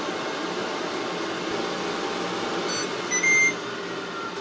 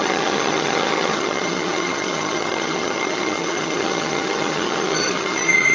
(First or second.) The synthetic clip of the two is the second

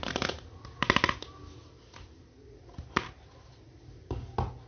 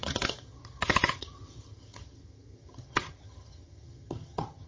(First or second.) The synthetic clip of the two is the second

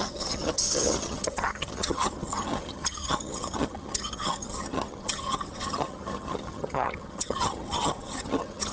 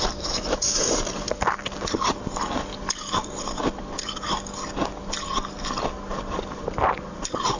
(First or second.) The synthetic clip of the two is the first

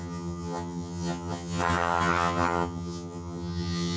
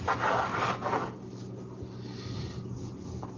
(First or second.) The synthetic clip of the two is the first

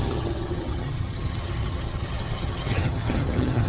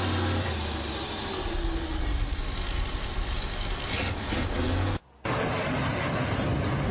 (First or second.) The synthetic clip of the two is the first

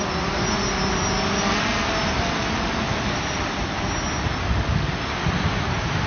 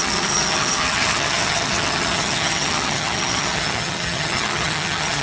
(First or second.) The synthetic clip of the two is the second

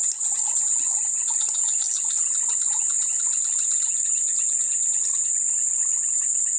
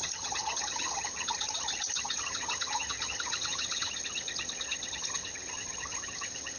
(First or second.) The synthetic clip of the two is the second